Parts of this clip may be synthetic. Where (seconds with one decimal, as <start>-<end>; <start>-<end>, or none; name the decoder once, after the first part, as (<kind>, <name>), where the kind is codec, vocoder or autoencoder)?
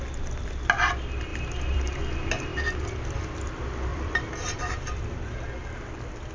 1.3-2.0 (vocoder, BigVGAN v2); 3.9-5.4